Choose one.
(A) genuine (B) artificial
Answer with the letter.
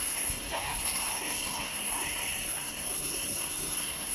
B